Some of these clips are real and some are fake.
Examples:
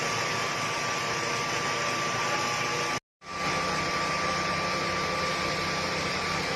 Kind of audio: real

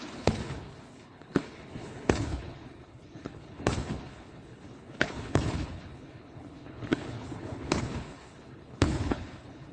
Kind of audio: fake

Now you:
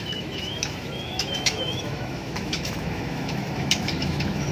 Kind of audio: fake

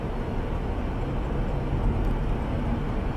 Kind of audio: real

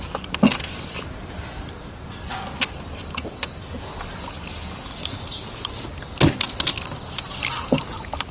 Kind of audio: real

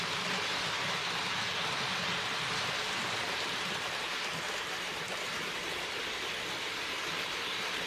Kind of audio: fake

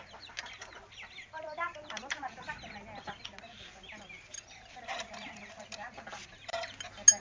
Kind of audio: real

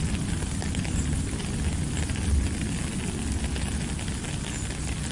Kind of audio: real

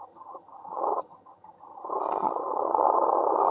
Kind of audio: fake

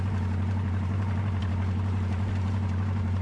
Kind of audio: fake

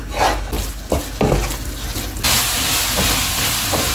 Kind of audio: real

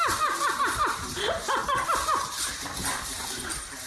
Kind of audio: fake